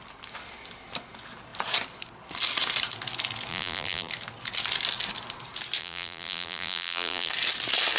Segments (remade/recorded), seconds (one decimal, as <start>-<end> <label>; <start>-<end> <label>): 0.0-3.5 recorded; 3.5-4.1 remade; 4.1-5.8 recorded; 5.8-7.3 remade; 7.3-8.0 recorded